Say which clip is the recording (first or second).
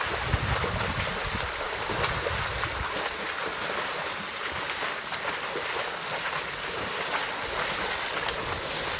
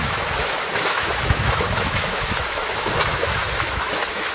first